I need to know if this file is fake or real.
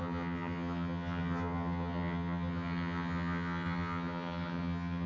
fake